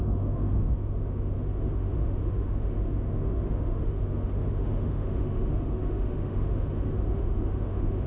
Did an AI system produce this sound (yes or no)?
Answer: yes